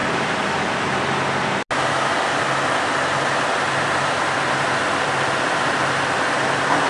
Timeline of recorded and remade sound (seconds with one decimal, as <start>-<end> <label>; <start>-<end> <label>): 0.0-6.9 recorded

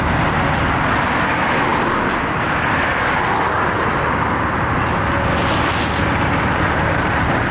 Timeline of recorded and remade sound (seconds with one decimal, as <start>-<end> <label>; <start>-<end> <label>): 0.0-7.5 recorded

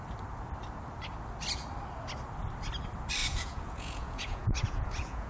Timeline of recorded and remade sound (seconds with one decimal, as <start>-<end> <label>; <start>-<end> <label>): 0.0-3.2 recorded; 3.2-5.3 remade

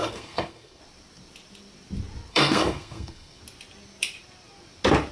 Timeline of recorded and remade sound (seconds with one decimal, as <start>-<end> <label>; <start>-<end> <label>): 0.0-0.8 remade; 0.8-2.3 recorded; 2.3-3.4 remade; 3.4-5.1 recorded

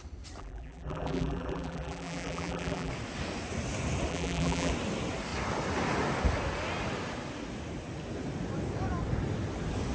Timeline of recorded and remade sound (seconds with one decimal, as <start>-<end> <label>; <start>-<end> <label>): 0.0-0.4 recorded; 0.4-2.9 remade; 2.9-4.1 recorded; 4.1-4.7 remade; 4.7-9.9 recorded